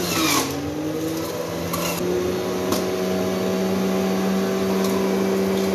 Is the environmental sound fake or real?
real